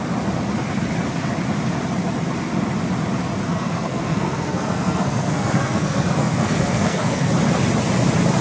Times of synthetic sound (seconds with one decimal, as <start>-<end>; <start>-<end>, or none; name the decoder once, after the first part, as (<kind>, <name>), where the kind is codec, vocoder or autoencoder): 3.5-7.3 (codec, SNAC)

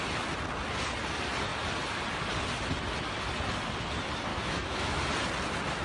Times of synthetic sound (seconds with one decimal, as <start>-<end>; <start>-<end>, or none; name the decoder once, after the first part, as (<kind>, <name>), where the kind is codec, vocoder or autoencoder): 4.3-5.0 (autoencoder, DAC-VAE)